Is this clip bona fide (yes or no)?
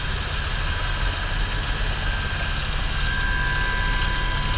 yes